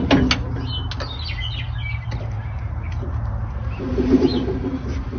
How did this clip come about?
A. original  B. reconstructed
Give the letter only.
A